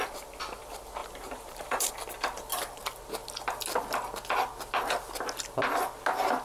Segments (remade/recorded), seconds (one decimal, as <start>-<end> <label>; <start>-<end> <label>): 0.0-1.0 recorded; 1.0-1.9 remade; 1.9-6.4 recorded